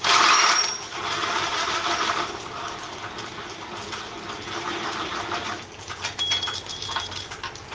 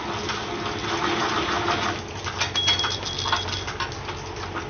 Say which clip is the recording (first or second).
second